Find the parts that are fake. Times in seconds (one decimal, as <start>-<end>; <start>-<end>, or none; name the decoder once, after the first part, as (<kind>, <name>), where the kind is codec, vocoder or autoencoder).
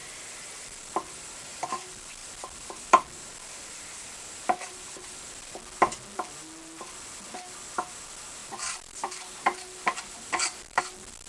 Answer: 0.0-1.7 (vocoder, BigVGAN v2); 2.2-5.8; 8.4-10.8